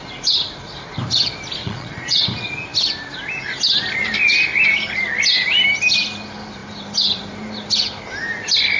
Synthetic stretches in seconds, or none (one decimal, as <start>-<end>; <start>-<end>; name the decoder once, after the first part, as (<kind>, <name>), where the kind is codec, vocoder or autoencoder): 1.6-2.2 (vocoder, Vocos)